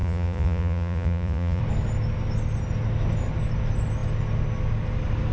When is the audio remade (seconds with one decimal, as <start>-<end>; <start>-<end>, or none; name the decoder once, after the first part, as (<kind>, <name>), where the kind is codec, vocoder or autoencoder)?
0.0-1.6 (vocoder, Vocos)